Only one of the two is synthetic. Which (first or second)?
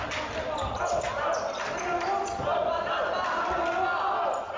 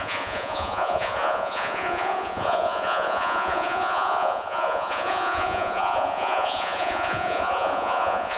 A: second